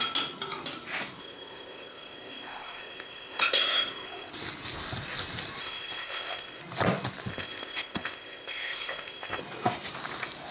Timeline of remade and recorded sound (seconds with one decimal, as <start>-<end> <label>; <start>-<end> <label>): 0.0-1.2 recorded; 1.2-4.3 remade; 4.3-5.6 recorded; 5.6-6.6 remade; 6.6-7.3 recorded; 7.3-9.4 remade; 9.4-10.5 recorded